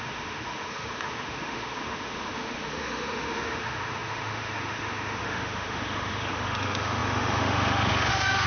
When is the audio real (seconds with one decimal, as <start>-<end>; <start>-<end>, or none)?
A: none

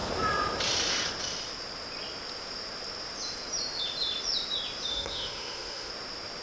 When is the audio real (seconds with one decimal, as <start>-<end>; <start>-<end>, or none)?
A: 0.0-4.9; 5.9-6.4

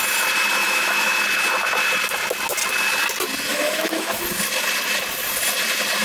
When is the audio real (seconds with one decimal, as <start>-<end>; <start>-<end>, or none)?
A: 0.0-0.6; 1.2-3.5; 4.2-6.0

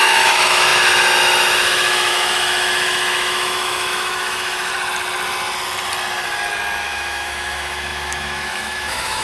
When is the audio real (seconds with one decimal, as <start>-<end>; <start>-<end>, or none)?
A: 4.7-6.8

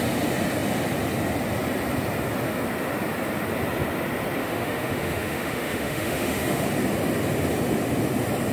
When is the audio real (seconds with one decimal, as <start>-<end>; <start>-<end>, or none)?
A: 0.0-4.4; 6.6-8.5

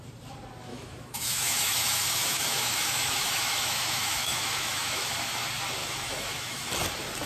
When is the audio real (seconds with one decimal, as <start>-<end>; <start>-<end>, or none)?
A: 0.0-0.7; 5.1-5.8; 6.7-7.3